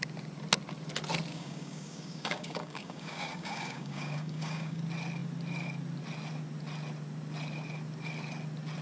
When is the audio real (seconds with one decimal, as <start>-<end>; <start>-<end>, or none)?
0.0-1.3; 4.8-8.8